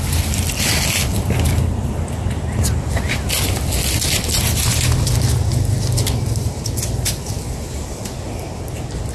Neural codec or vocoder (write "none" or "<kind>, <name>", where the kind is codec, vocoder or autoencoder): none